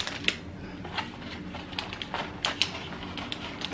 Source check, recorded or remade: recorded